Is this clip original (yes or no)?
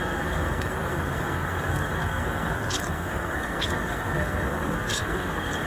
no